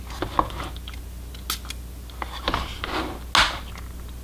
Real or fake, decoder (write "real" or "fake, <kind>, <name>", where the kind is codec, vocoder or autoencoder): real